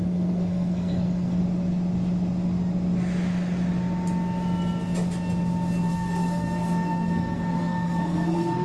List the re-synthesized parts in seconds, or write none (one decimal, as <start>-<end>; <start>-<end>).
0.0-1.4; 5.9-8.6